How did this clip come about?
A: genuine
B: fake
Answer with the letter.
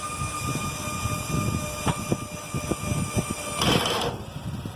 A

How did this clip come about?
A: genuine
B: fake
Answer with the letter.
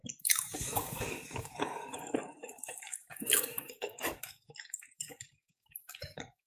B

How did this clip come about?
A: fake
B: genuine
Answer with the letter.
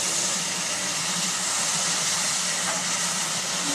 A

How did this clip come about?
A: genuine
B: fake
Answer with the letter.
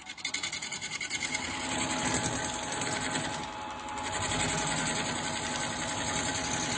A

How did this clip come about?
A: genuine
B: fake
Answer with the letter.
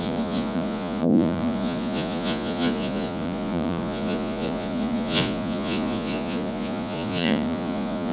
B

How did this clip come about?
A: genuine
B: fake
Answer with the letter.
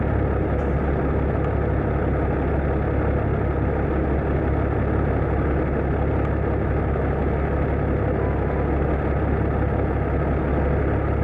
A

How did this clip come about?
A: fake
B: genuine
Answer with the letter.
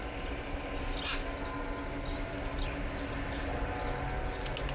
B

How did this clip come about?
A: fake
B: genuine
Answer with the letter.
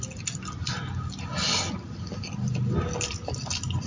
B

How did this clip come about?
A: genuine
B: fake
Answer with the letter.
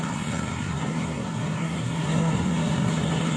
B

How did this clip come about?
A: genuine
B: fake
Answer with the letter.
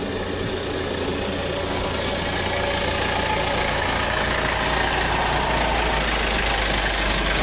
A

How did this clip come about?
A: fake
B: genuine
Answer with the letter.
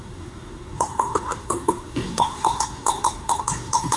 A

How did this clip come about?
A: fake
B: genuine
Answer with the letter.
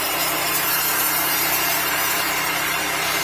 A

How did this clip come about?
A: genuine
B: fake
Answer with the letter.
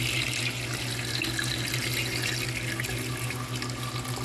A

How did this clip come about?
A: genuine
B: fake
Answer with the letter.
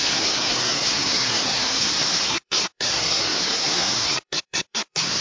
B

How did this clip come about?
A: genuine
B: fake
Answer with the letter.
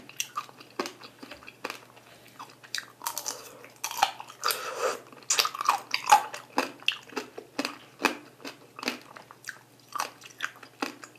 A